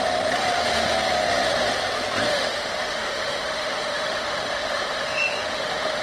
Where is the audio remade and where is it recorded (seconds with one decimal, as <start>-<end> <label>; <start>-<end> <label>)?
0.0-2.3 recorded; 2.3-6.0 remade